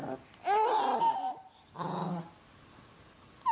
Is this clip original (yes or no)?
yes